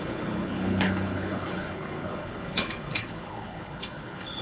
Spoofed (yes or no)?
yes